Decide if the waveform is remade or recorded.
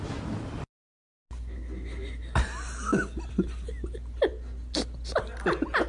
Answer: recorded